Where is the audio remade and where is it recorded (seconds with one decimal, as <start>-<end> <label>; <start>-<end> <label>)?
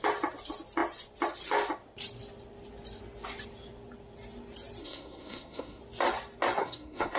0.0-4.8 recorded; 4.8-5.8 remade; 5.8-6.6 recorded; 6.6-7.2 remade